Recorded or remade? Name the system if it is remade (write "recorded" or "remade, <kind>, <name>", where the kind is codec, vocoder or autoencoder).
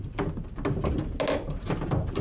recorded